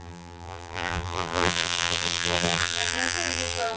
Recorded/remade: remade